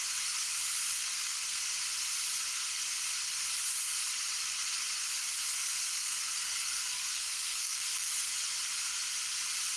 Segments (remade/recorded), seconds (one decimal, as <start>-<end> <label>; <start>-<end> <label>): 0.0-1.0 recorded; 1.0-1.6 remade; 1.6-5.8 recorded; 5.8-8.3 remade; 8.3-9.8 recorded